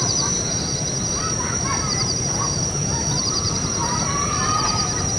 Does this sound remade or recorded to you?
remade